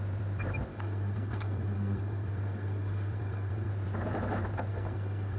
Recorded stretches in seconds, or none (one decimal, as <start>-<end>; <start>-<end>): 0.0-0.7; 3.7-4.7